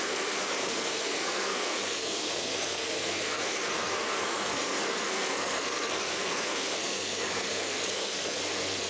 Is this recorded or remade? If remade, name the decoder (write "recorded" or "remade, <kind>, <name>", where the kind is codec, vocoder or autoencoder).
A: remade, codec, SNAC